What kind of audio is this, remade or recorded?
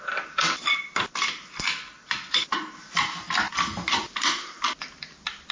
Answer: recorded